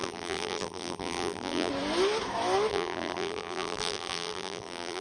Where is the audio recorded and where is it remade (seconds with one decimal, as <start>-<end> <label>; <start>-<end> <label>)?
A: 0.0-1.7 remade; 1.7-2.7 recorded; 2.7-5.0 remade